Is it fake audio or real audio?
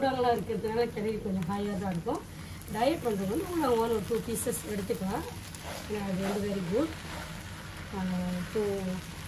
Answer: real